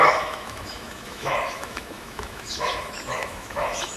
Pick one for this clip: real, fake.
fake